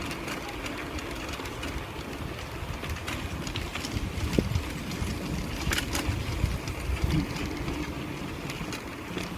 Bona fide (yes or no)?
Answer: yes